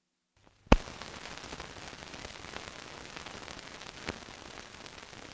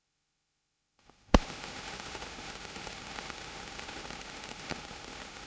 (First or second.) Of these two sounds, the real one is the first